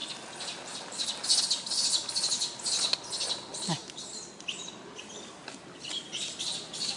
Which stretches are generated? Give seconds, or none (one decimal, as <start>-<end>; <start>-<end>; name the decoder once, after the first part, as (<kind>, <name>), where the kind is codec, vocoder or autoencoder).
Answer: 3.8-4.4 (vocoder, BigVGAN v2)